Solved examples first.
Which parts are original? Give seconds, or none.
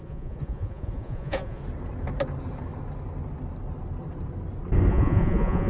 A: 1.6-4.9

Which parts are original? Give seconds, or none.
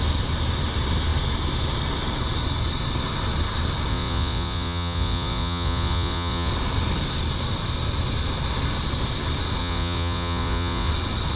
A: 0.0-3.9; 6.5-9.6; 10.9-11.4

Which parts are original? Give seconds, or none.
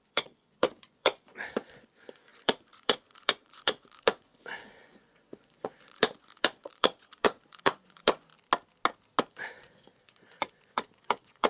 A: 8.3-9.3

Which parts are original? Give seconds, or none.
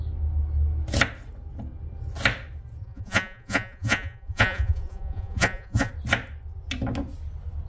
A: 0.0-2.8; 5.9-7.7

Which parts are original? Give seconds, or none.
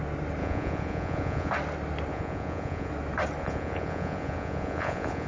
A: 0.0-0.4; 1.5-2.1; 2.9-3.4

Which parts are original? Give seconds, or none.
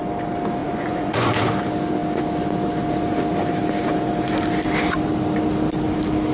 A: 0.0-0.6; 1.3-6.3